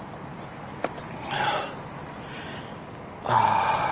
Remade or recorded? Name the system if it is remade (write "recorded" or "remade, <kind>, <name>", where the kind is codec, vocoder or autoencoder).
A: recorded